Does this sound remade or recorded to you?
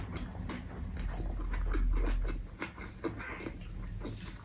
recorded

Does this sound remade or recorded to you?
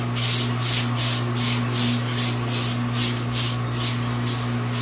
recorded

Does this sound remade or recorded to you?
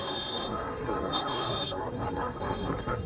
remade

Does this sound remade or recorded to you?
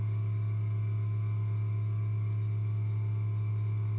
recorded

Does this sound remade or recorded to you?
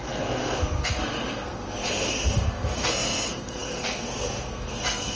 remade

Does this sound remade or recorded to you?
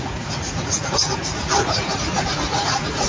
remade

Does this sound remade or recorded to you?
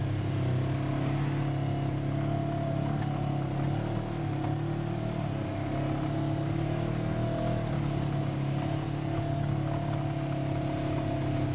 recorded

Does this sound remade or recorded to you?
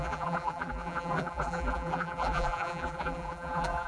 remade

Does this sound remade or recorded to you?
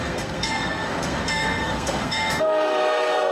remade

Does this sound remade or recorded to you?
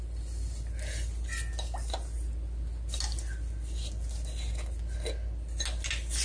recorded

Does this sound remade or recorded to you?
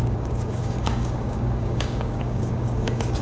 remade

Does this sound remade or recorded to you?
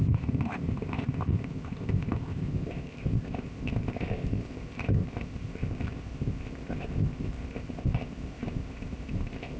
remade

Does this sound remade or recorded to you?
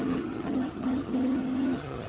remade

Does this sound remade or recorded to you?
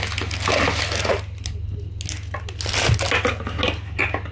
recorded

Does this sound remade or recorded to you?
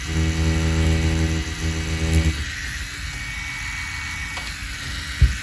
recorded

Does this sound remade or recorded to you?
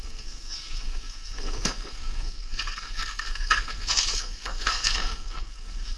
remade